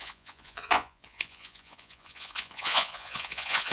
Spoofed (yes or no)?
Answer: yes